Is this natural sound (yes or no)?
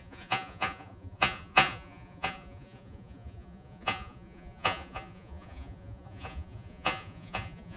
no